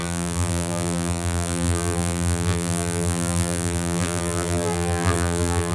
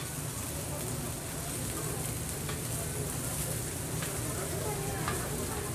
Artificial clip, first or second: first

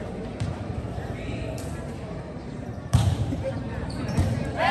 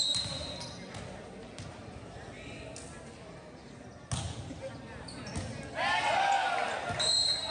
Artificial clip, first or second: first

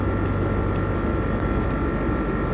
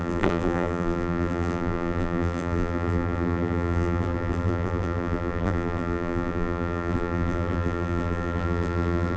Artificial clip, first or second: second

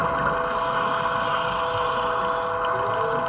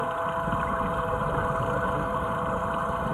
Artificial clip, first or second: second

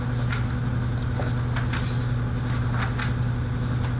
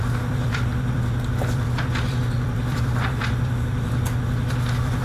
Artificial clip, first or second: second